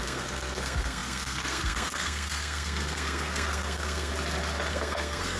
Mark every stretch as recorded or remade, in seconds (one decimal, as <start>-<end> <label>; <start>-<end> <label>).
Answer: 0.0-4.1 remade; 4.1-4.7 recorded; 4.7-5.4 remade